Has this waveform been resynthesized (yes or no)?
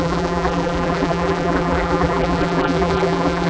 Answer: yes